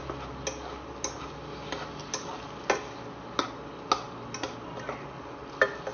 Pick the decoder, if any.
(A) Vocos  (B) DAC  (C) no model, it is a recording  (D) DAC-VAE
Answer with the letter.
C